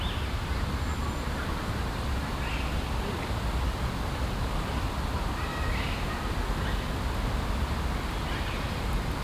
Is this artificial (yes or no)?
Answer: no